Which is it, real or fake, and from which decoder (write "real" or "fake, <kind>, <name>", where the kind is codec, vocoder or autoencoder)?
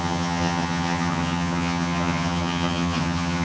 fake, vocoder, HiFi-GAN